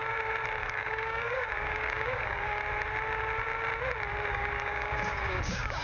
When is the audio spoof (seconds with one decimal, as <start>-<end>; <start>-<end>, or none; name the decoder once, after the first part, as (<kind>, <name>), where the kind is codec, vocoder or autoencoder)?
0.6-2.6 (codec, DAC); 4.3-5.8